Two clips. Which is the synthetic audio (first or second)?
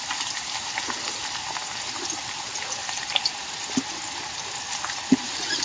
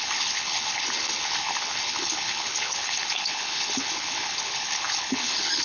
second